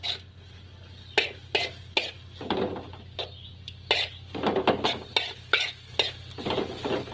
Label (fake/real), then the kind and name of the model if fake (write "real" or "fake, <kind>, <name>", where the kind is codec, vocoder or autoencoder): real